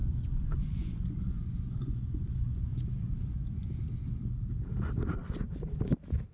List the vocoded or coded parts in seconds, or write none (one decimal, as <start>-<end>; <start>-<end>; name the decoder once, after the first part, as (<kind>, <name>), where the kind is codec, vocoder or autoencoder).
0.0-3.8 (vocoder, Vocos)